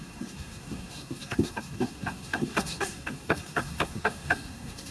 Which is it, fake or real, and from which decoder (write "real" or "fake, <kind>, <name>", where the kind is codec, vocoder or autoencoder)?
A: fake, codec, SNAC